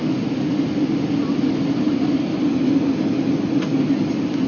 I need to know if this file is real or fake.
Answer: real